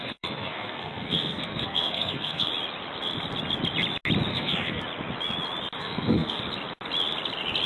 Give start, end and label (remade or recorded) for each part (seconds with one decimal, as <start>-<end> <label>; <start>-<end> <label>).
0.0-2.5 remade; 2.5-4.3 recorded; 4.3-4.8 remade; 4.8-5.8 recorded; 5.8-6.4 remade; 6.4-7.7 recorded